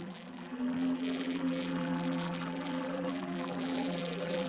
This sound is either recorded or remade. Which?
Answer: remade